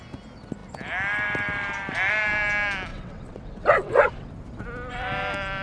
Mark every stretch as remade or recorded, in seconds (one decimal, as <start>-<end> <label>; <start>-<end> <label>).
0.0-2.9 recorded; 2.9-4.3 remade; 4.3-5.6 recorded